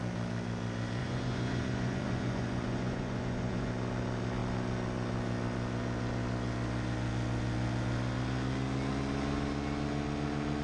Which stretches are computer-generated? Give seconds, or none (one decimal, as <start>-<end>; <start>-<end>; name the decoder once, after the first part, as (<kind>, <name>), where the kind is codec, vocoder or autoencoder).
1.0-3.7 (vocoder, Vocos)